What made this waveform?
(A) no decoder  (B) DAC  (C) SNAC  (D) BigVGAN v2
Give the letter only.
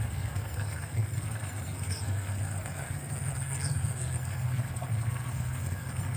C